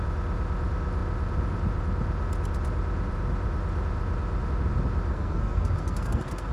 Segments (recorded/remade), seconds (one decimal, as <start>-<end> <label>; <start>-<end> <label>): 0.0-5.1 recorded; 5.1-6.5 remade